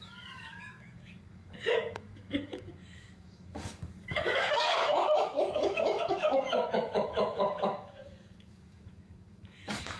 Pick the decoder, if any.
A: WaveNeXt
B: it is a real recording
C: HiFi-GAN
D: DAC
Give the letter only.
D